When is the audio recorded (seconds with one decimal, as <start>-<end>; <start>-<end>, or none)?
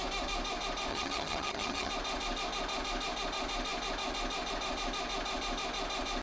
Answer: 0.0-0.9; 1.9-6.2